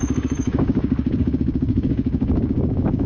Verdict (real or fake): fake